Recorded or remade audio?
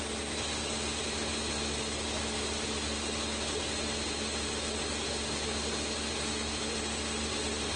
recorded